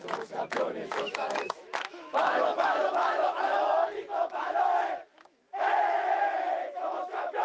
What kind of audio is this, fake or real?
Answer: fake